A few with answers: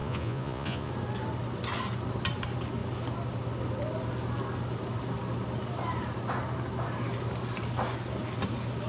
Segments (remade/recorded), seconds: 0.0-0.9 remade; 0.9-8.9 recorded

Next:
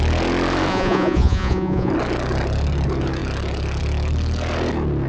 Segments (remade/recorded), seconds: 0.0-0.7 recorded; 0.7-1.9 remade; 1.9-5.1 recorded

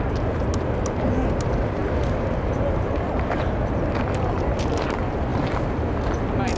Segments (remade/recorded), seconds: 0.0-6.6 recorded

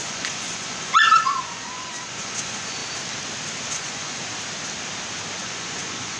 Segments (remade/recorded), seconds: 0.0-2.8 remade; 2.8-3.7 recorded; 3.7-4.2 remade; 4.2-5.4 recorded; 5.4-6.2 remade

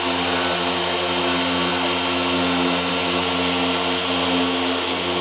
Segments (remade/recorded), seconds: 0.0-5.2 recorded

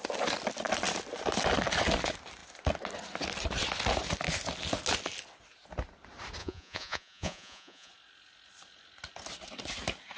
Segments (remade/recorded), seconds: 0.0-6.4 recorded; 6.4-7.9 remade; 7.9-10.2 recorded

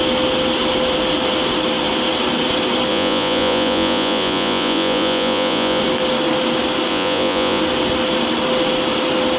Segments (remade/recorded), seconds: 0.0-2.9 recorded; 2.9-5.8 remade; 5.8-6.9 recorded; 6.9-7.6 remade; 7.6-9.4 recorded

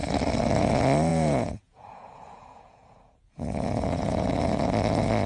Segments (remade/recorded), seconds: 0.0-1.1 recorded; 1.1-4.3 remade; 4.3-5.3 recorded